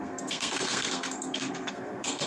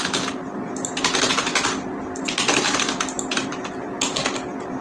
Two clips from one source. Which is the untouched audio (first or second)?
second